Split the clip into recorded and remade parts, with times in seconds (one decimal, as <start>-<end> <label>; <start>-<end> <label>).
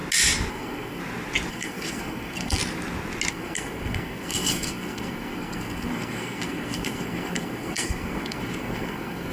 0.0-0.5 recorded; 0.5-1.0 remade; 1.0-1.5 recorded; 1.5-2.6 remade; 2.6-3.3 recorded; 3.3-9.3 remade